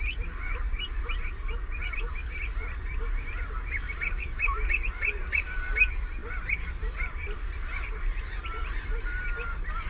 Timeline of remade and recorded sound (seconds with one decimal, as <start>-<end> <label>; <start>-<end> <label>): 0.0-9.9 remade